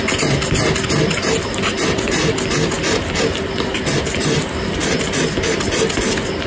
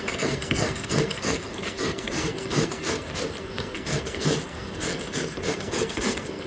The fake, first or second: second